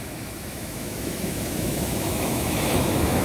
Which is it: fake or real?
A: fake